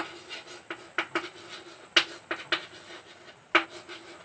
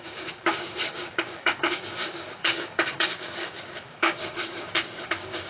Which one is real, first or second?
first